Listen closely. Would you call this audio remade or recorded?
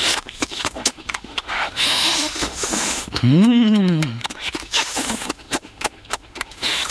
remade